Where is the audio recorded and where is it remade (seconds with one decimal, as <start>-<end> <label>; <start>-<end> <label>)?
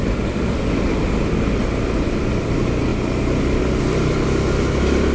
0.0-5.1 recorded